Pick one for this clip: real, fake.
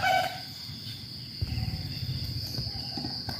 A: real